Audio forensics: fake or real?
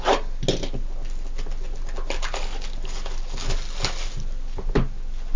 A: real